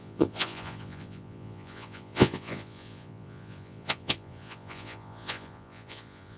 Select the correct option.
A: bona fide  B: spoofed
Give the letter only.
B